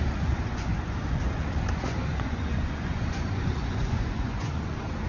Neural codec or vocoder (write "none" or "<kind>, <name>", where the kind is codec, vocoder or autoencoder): vocoder, Vocos